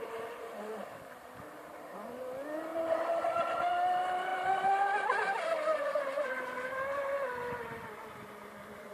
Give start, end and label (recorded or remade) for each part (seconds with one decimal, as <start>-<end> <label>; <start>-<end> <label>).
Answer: 0.0-4.3 recorded; 4.3-6.5 remade; 6.5-8.9 recorded